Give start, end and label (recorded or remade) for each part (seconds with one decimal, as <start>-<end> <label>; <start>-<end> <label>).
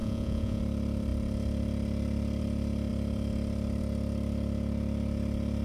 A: 0.0-0.6 remade; 0.6-5.6 recorded